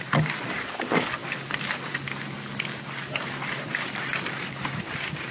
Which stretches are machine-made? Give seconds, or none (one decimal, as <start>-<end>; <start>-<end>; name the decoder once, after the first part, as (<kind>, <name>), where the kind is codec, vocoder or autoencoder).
none